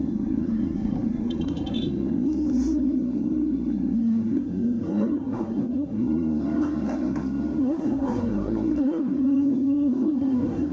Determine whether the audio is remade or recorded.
remade